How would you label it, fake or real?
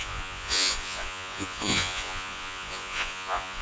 fake